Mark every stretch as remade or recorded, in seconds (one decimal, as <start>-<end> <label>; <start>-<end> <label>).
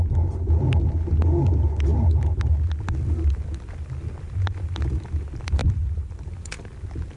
0.0-5.6 recorded; 5.6-6.5 remade; 6.5-7.2 recorded